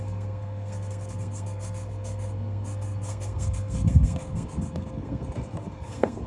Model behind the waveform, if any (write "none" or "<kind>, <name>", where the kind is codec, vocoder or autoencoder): codec, SNAC